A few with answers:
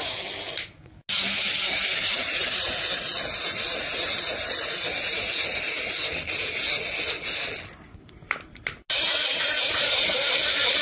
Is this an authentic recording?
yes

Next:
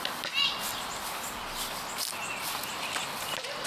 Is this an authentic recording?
yes